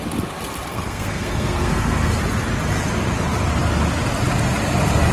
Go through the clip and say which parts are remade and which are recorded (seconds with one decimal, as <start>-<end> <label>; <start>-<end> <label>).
0.0-0.7 recorded; 0.7-2.2 remade; 2.2-5.1 recorded